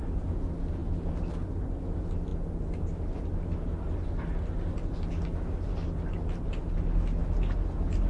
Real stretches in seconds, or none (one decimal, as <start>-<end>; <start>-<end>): 0.0-8.1